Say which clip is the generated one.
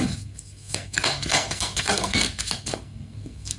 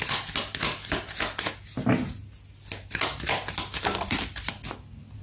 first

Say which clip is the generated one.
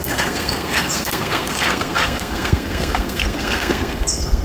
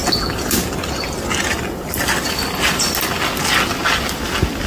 first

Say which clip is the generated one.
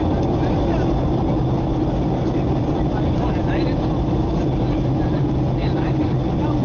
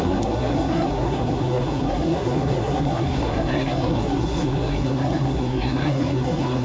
second